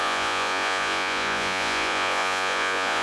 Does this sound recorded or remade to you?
remade